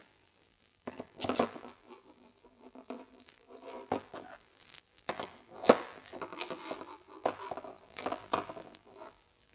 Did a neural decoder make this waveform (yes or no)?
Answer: yes